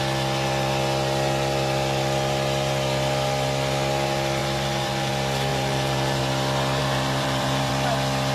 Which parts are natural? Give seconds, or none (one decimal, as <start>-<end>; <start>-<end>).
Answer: 0.0-4.4; 5.1-5.5; 6.2-6.8; 7.7-8.3